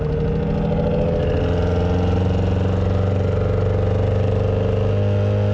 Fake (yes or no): no